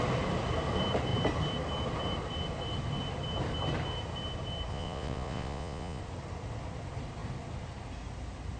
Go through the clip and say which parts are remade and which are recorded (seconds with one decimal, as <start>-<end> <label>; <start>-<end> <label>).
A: 0.0-4.7 recorded; 4.7-6.0 remade; 6.0-8.6 recorded